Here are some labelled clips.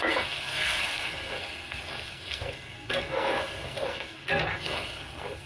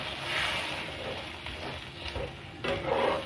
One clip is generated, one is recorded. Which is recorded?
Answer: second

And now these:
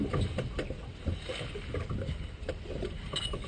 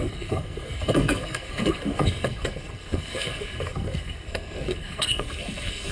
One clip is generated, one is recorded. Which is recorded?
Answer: first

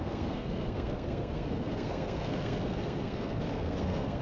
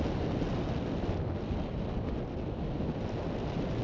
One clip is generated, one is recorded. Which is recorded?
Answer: second